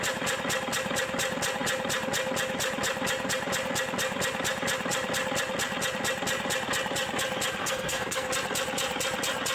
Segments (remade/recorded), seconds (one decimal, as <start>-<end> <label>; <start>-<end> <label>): 0.0-7.6 recorded; 7.6-8.3 remade; 8.3-9.5 recorded